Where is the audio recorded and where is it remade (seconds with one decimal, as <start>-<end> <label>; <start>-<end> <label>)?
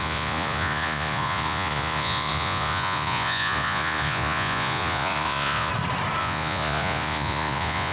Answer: 0.0-5.7 remade; 5.7-6.2 recorded; 6.2-7.9 remade